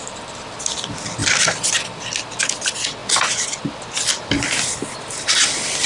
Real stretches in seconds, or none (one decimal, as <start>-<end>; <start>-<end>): 0.0-5.9